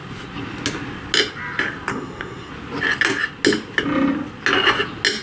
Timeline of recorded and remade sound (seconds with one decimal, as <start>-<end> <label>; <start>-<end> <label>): 0.0-1.9 recorded; 1.9-2.5 remade; 2.5-5.2 recorded